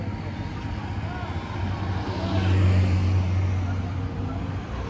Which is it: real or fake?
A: real